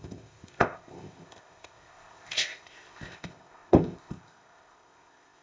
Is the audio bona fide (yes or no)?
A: no